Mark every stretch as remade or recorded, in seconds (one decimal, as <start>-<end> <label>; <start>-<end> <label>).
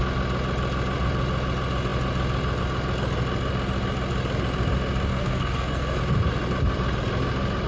0.0-5.1 recorded; 5.1-6.0 remade; 6.0-7.7 recorded